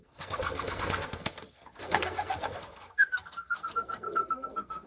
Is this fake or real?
fake